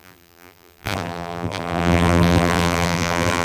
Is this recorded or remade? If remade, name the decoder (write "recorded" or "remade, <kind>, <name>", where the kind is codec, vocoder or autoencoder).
remade, vocoder, BigVGAN v2